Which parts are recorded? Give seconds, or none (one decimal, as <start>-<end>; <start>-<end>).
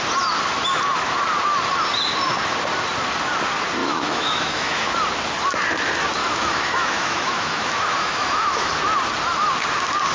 0.0-3.8; 4.9-6.2; 8.7-10.1